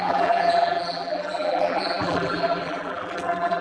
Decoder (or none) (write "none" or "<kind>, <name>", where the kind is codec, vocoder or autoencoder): vocoder, BigVGAN v2